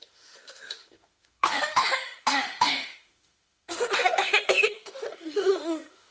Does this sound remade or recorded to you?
remade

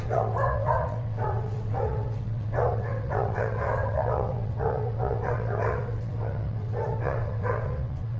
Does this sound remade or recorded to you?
remade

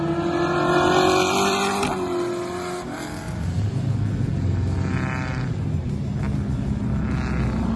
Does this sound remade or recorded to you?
recorded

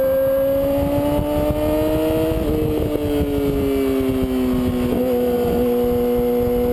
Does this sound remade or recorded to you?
recorded